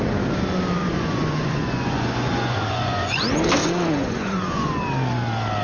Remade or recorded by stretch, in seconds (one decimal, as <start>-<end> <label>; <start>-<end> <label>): 0.0-0.8 recorded; 0.8-3.2 remade; 3.2-3.6 recorded; 3.6-4.7 remade; 4.7-5.6 recorded